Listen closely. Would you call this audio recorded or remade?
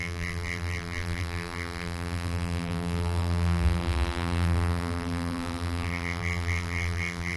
remade